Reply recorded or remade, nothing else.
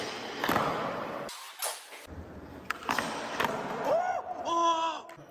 recorded